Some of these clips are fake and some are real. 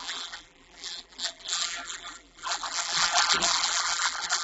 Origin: fake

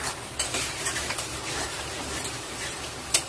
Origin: fake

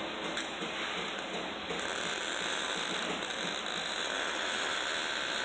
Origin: real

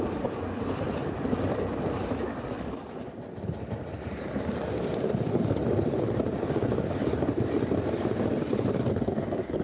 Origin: real